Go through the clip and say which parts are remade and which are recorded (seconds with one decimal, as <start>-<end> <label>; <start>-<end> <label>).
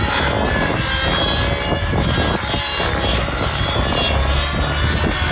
0.0-5.3 recorded